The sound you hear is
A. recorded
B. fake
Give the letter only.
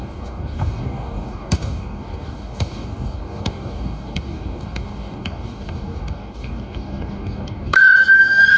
B